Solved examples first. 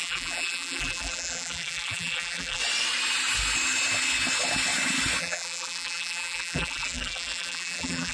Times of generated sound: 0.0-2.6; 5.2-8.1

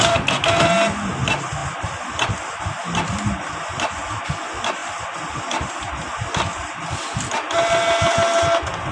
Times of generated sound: 4.8-5.8